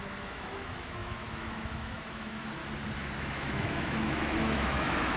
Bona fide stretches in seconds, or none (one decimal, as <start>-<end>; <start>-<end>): 2.6-3.2

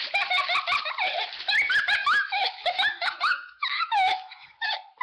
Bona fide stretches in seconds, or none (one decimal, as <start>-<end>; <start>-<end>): 0.0-2.0; 4.5-5.0

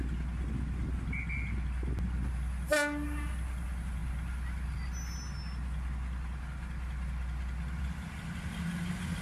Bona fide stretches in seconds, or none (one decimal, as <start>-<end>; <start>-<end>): 0.0-9.2

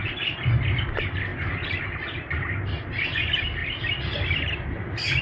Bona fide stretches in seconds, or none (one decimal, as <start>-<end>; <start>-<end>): 0.0-5.2

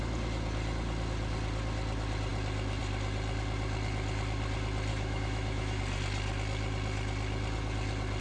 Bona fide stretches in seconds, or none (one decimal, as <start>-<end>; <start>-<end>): 0.0-4.9; 5.8-8.2

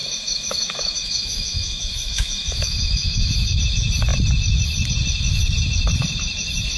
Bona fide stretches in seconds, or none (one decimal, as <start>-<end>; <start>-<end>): 3.6-6.8

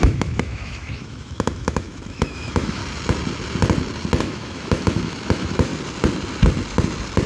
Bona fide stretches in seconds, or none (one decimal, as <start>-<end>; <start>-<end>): 2.8-4.2; 5.7-7.3

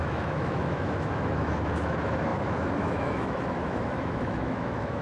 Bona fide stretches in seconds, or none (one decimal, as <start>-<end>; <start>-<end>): none